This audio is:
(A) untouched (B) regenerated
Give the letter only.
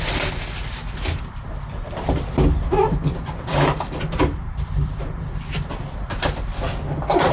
B